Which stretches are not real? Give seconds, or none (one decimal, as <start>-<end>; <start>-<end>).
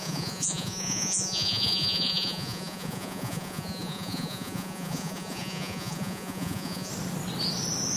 0.0-6.9